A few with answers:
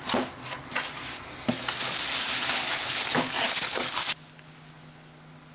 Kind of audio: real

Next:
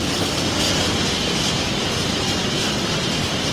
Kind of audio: real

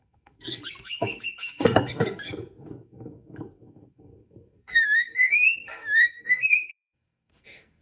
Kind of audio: fake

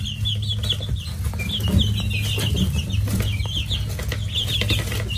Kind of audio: real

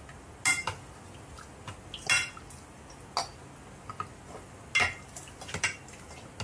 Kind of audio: real